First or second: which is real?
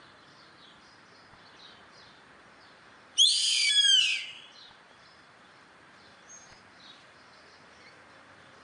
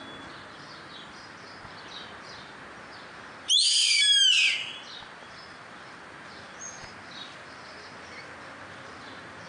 second